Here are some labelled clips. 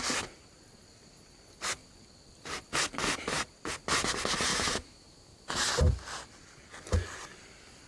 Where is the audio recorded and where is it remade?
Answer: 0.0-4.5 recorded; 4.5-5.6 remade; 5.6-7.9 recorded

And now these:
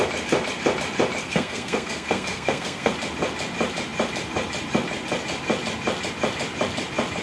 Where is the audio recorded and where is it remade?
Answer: 0.0-1.2 recorded; 1.2-2.9 remade; 2.9-7.2 recorded

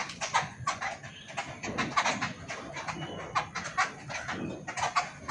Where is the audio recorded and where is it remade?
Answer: 0.0-0.8 remade; 0.8-5.3 recorded

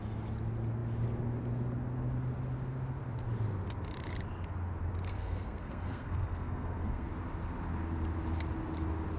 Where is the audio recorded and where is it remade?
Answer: 0.0-5.1 recorded; 5.1-7.1 remade; 7.1-9.2 recorded

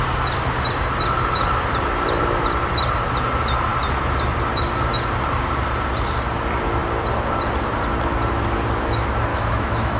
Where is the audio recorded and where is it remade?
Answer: 0.0-9.3 recorded; 9.3-10.0 remade